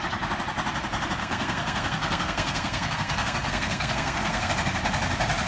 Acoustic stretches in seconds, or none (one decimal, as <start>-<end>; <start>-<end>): 0.0-1.2; 4.5-5.5